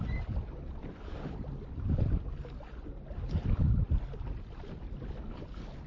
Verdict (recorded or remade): recorded